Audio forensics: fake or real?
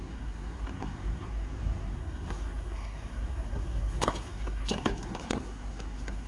fake